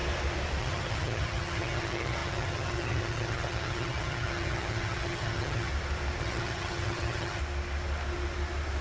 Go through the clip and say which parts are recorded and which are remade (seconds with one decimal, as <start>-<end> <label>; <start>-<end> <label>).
0.0-0.6 recorded; 0.6-5.7 remade; 5.7-6.2 recorded; 6.2-7.4 remade; 7.4-8.8 recorded